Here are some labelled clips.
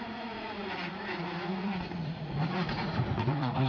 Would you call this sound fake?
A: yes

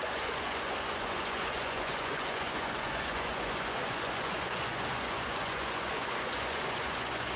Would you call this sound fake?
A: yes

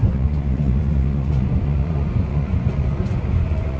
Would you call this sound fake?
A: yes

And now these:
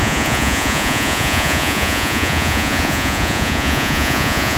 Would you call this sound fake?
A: yes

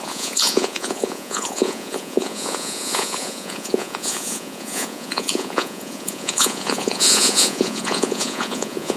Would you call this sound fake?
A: yes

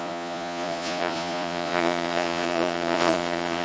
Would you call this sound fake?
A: yes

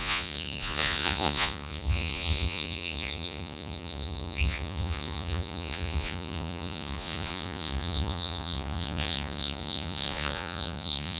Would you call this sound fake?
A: yes